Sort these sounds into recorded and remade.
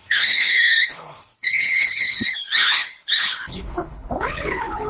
remade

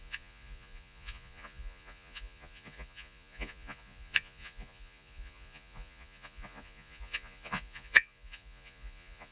remade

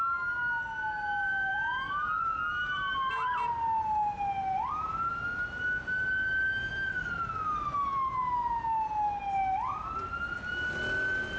recorded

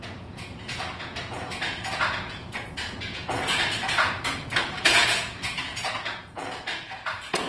remade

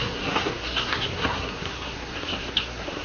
remade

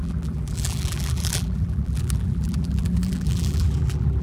remade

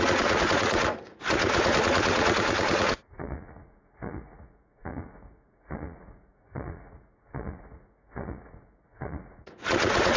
remade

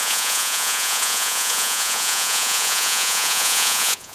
remade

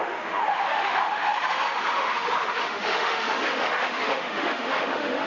remade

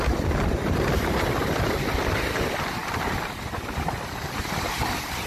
recorded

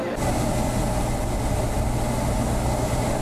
recorded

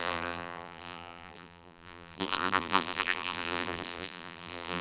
remade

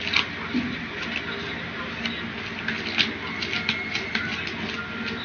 recorded